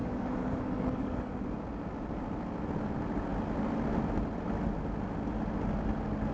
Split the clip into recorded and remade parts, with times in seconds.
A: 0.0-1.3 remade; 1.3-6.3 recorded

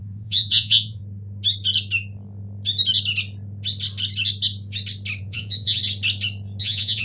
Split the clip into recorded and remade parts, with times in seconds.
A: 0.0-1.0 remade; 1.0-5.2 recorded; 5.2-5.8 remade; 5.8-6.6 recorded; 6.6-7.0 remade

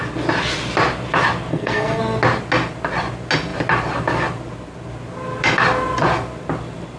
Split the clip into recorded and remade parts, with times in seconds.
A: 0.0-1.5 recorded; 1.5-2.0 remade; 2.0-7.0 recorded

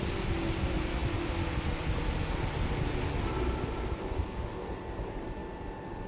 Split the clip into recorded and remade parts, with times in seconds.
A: 0.0-6.1 recorded

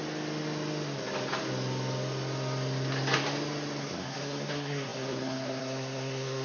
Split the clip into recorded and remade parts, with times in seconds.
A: 0.0-3.8 recorded; 3.8-6.4 remade

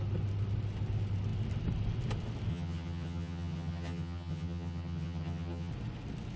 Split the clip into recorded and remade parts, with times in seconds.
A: 0.0-2.5 recorded; 2.5-5.7 remade; 5.7-6.4 recorded

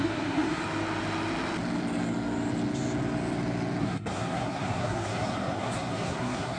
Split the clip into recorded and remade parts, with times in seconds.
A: 0.0-0.6 remade; 0.6-3.8 recorded; 3.8-6.6 remade

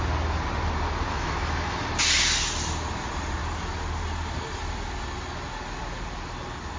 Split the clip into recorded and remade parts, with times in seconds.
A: 0.0-1.1 recorded; 1.1-1.9 remade; 1.9-6.8 recorded